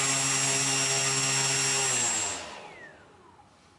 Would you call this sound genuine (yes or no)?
yes